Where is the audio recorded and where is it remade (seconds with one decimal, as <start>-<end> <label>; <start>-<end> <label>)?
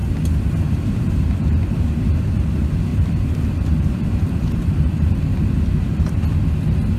0.0-2.9 recorded; 2.9-6.3 remade; 6.3-7.0 recorded